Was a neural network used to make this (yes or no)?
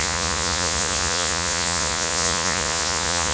yes